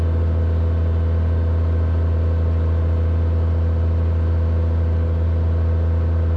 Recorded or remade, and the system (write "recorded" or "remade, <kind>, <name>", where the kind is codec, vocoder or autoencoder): recorded